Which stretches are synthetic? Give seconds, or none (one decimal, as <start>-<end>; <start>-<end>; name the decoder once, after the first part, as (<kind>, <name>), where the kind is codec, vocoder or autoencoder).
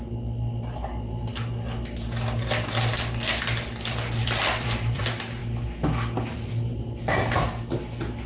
4.2-5.0 (vocoder, BigVGAN v2)